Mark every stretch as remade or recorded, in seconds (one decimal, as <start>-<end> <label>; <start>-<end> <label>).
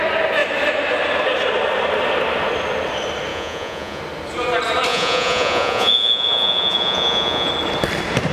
0.0-3.3 recorded; 3.3-4.0 remade; 4.0-4.9 recorded; 4.9-7.5 remade; 7.5-8.3 recorded